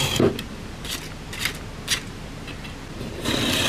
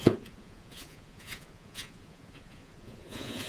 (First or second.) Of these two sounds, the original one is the first